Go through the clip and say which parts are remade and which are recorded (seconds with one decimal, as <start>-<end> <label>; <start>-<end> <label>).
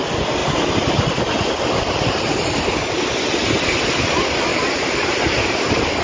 0.0-4.5 recorded; 4.5-5.2 remade; 5.2-6.0 recorded